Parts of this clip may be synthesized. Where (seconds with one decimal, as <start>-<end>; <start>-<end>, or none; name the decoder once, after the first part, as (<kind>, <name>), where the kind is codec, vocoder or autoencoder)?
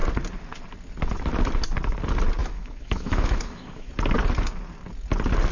2.4-3.9 (autoencoder, DAC-VAE)